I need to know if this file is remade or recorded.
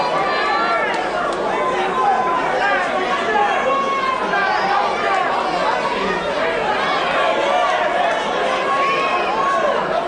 recorded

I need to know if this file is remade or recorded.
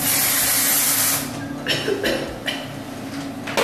recorded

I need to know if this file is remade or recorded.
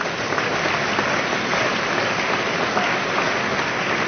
recorded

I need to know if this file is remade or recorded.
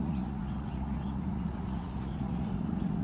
remade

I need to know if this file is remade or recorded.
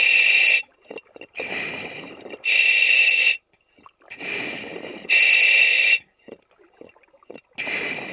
recorded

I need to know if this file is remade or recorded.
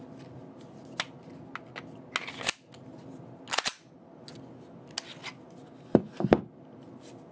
recorded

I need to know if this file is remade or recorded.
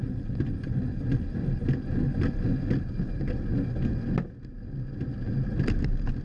recorded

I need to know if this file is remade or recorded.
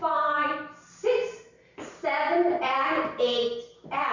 recorded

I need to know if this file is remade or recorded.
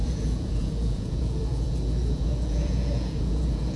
remade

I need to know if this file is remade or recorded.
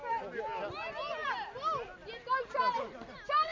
recorded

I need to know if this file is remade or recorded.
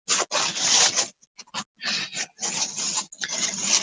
recorded